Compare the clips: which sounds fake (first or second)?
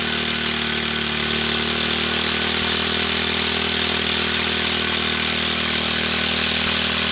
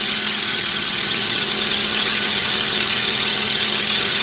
second